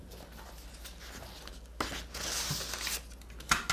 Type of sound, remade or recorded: recorded